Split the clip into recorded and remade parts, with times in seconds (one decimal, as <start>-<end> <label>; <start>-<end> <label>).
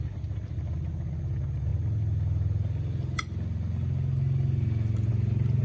0.0-5.6 recorded